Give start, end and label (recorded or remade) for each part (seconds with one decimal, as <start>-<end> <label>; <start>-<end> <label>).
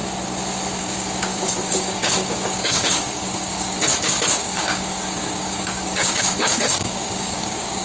0.0-0.8 recorded; 0.8-7.8 remade